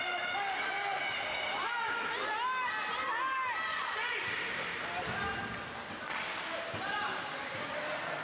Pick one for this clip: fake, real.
real